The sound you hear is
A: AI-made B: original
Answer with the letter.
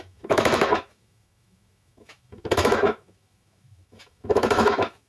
A